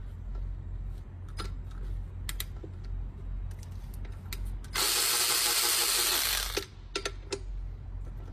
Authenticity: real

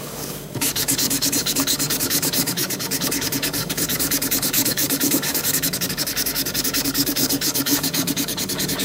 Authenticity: fake